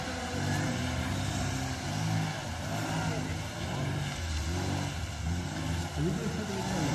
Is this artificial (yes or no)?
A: no